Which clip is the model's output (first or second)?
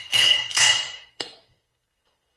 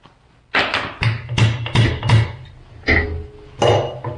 first